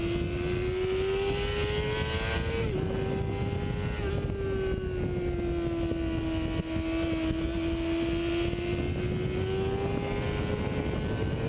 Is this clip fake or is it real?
real